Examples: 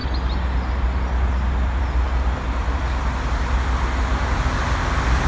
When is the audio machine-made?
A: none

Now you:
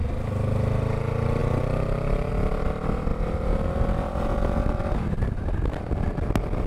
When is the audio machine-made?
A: none

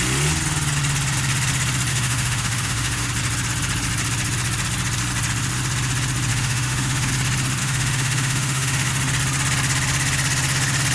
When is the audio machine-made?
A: 1.9-3.1 (autoencoder, DAC-VAE); 6.3-7.1; 7.6-8.9

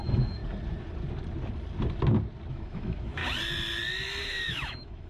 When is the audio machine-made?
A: 0.0-0.4 (autoencoder, DAC-VAE); 2.5-3.2; 4.2-5.1

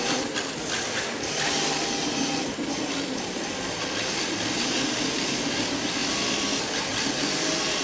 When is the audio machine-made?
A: none

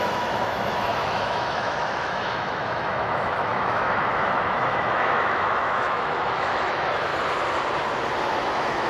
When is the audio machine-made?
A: 0.0-7.1 (autoencoder, DAC-VAE); 8.4-8.9

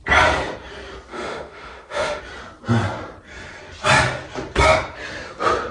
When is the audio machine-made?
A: 1.1-2.2 (autoencoder, DAC-VAE)